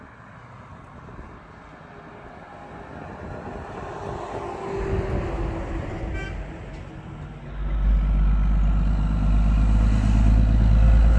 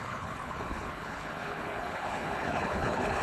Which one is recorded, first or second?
first